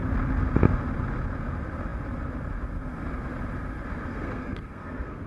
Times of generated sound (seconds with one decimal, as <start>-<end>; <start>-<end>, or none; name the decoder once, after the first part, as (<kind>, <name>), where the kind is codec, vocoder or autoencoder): 4.1-5.3 (codec, SNAC)